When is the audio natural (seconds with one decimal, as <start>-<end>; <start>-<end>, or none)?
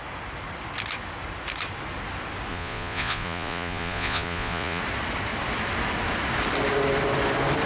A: 0.0-2.5; 4.8-7.7